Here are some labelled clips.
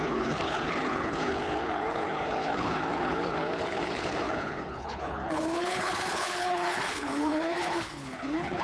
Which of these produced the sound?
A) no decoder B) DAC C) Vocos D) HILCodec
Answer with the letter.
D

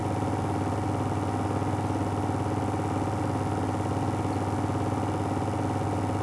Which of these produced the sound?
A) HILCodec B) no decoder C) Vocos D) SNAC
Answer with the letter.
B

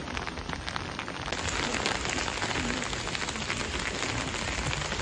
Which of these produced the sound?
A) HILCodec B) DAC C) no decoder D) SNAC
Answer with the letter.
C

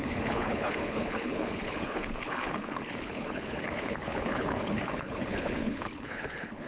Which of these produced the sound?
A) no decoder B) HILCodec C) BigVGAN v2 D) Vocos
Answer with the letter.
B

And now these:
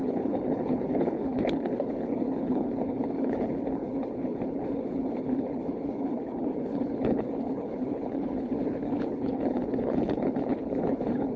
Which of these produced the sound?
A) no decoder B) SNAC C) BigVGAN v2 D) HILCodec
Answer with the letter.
D